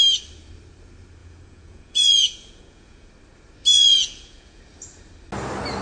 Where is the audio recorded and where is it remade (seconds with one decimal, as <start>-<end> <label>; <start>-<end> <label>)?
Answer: 0.0-1.2 recorded; 1.2-3.1 remade; 3.1-3.7 recorded; 3.7-4.6 remade; 4.6-5.8 recorded